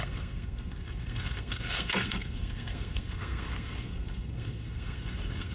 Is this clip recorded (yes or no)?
no